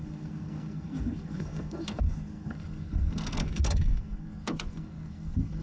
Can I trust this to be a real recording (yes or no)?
no